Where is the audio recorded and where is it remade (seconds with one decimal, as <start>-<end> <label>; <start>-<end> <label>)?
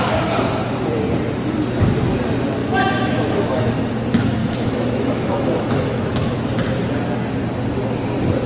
0.0-2.6 recorded; 2.6-3.7 remade; 3.7-4.4 recorded; 4.4-6.4 remade; 6.4-8.5 recorded